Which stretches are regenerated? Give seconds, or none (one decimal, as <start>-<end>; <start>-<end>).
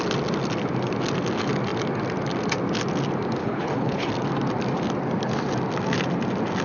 3.4-4.1